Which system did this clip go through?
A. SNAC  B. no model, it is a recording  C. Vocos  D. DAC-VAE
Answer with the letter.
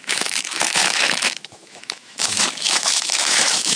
D